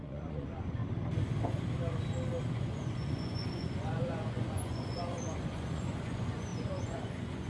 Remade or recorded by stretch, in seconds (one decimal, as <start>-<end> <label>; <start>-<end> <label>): 0.0-0.8 remade; 0.8-2.5 recorded; 2.5-7.5 remade